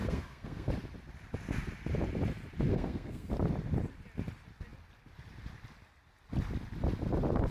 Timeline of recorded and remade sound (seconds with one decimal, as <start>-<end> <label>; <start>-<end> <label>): 0.0-0.7 remade; 0.7-2.7 recorded; 2.7-3.3 remade; 3.3-7.5 recorded